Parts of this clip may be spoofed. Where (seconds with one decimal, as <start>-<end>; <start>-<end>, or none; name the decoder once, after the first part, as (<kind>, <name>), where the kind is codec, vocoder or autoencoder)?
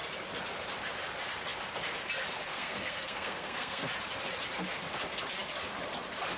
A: 2.5-3.9 (codec, SNAC)